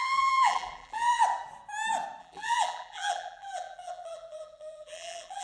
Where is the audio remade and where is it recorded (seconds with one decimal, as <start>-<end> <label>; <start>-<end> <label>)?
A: 0.0-1.2 remade; 1.2-2.2 recorded; 2.2-5.4 remade